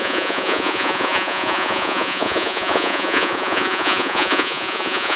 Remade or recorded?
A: remade